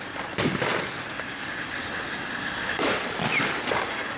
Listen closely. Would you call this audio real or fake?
real